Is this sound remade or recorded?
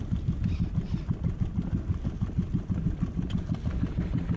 recorded